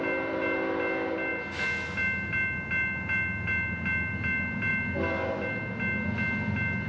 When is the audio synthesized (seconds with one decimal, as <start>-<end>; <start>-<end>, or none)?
none

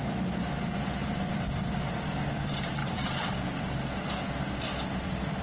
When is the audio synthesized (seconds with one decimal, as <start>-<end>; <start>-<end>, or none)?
1.0-1.7

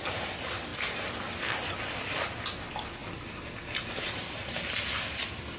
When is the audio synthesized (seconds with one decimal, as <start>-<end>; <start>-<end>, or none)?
none

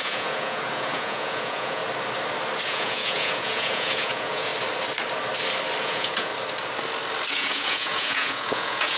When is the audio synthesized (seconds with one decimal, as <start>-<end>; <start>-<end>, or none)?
0.0-1.8; 2.7-4.5; 5.8-6.3; 7.3-9.0

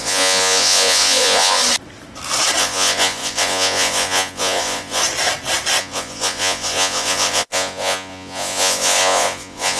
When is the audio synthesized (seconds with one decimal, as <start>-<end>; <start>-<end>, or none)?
0.0-1.6; 2.6-5.0; 5.8-9.8

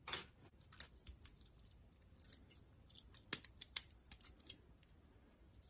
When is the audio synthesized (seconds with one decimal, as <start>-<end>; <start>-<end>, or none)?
0.0-5.7

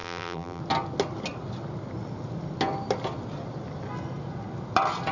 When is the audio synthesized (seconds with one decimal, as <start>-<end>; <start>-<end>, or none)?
0.0-0.6